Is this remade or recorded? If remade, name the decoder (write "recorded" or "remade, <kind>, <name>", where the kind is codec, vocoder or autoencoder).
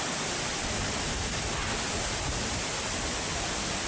recorded